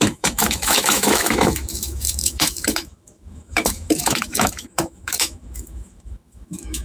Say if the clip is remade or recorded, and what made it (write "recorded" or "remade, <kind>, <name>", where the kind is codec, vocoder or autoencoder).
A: remade, autoencoder, DAC-VAE